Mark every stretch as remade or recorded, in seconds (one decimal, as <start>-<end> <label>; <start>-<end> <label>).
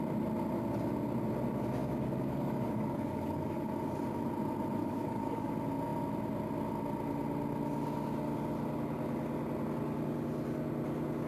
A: 0.0-1.8 recorded; 1.8-3.7 remade; 3.7-4.8 recorded; 4.8-5.5 remade; 5.5-11.3 recorded